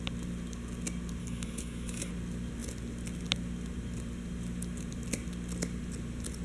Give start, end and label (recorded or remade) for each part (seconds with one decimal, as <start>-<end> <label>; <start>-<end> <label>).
0.0-1.2 recorded; 1.2-2.1 remade; 2.1-6.4 recorded

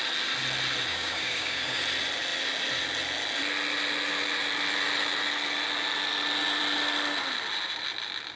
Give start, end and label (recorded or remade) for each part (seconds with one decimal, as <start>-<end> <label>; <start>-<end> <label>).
0.0-0.9 recorded; 0.9-1.8 remade; 1.8-8.4 recorded

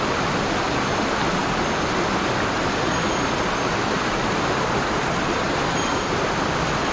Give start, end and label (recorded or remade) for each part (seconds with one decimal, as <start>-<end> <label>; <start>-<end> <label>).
0.0-6.9 recorded

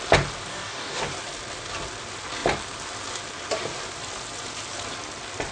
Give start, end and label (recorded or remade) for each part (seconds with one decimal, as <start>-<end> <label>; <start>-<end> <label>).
0.0-0.5 recorded; 0.5-1.1 remade; 1.1-5.5 recorded